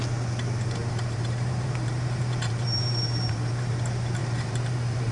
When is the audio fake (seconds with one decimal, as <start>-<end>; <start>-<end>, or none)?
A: 0.8-3.7; 4.2-5.1